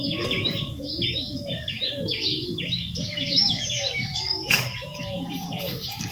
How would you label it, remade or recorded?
remade